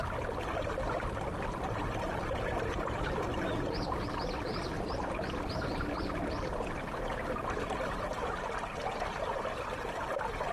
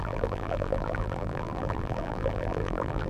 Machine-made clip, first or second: second